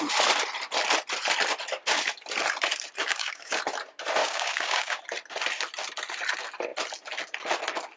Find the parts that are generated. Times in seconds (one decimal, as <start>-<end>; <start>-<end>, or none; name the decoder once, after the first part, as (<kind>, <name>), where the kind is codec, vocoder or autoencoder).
3.0-3.6 (codec, DAC); 4.2-5.0